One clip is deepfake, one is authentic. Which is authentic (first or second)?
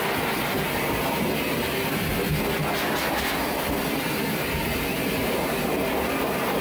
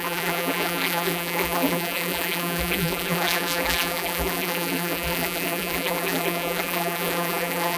first